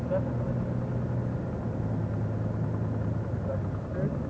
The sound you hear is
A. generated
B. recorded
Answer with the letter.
B